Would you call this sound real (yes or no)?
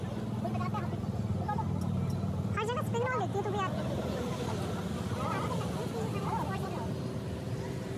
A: yes